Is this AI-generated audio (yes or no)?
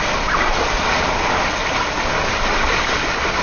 no